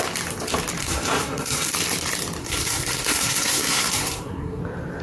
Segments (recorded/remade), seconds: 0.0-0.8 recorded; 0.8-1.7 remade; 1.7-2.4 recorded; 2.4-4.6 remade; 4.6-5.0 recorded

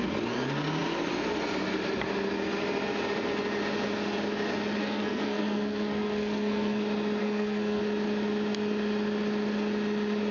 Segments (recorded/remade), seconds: 0.0-4.8 recorded; 4.8-6.8 remade; 6.8-7.2 recorded; 7.2-7.8 remade; 7.8-10.3 recorded

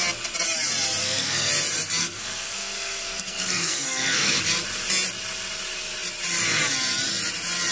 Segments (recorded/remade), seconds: 0.0-1.0 recorded; 1.0-1.5 remade; 1.5-2.0 recorded; 2.0-4.4 remade; 4.4-7.7 recorded

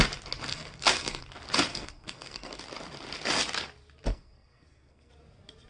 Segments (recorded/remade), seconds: 0.0-0.5 recorded; 0.5-1.2 remade; 1.2-1.7 recorded; 1.7-2.6 remade; 2.6-4.1 recorded; 4.1-5.1 remade; 5.1-5.7 recorded

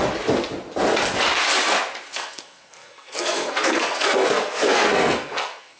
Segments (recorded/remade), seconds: 0.0-2.1 recorded; 2.1-5.8 remade

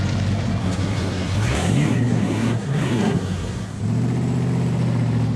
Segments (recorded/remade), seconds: 0.0-0.6 recorded; 0.6-3.8 remade; 3.8-5.4 recorded